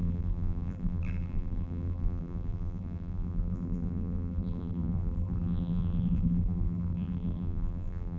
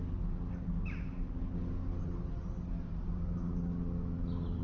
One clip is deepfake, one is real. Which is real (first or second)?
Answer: second